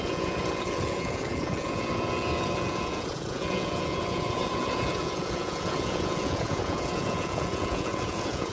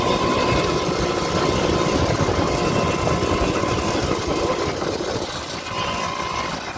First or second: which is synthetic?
first